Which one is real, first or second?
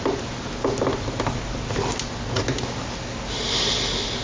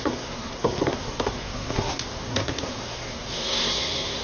first